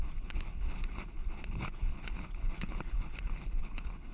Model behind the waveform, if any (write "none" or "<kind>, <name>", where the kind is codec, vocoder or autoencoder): codec, HILCodec